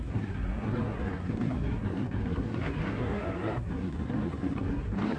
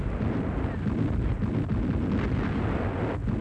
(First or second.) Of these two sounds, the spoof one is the first